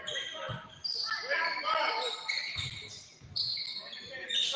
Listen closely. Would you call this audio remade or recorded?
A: recorded